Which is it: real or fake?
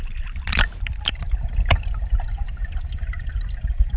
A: fake